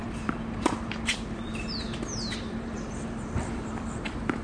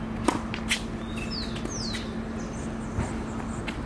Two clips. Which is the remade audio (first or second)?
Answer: first